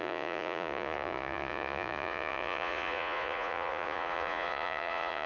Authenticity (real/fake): fake